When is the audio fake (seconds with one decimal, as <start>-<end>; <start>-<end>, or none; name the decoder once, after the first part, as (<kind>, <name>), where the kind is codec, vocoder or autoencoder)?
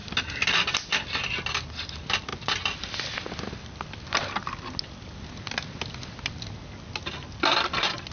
none